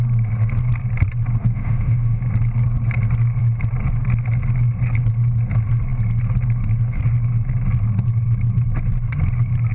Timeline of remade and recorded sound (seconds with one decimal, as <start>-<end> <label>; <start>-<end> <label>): 0.0-1.4 recorded; 1.4-2.2 remade; 2.2-9.7 recorded